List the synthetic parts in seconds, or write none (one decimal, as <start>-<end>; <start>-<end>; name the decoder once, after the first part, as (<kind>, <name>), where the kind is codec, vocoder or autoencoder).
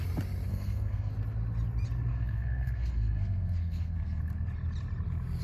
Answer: 0.5-1.1 (codec, SNAC); 2.1-4.2